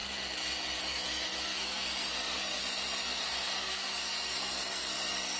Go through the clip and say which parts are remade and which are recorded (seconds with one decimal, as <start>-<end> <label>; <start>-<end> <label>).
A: 0.0-0.8 recorded; 0.8-2.6 remade; 2.6-3.2 recorded; 3.2-5.4 remade